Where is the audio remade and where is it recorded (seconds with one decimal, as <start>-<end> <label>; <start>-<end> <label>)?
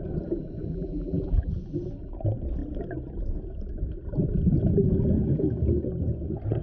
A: 0.0-0.7 recorded; 0.7-1.5 remade; 1.5-6.6 recorded